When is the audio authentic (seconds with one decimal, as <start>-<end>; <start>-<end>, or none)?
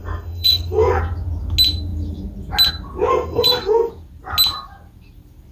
1.0-3.1; 3.9-5.5